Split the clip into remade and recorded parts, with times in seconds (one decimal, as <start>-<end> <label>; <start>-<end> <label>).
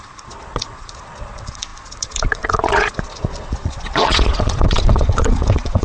0.0-5.8 remade